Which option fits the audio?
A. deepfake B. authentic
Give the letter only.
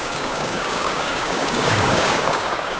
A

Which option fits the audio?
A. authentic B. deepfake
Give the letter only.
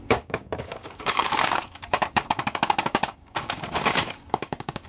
B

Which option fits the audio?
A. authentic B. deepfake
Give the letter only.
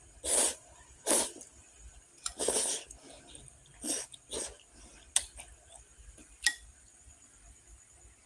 A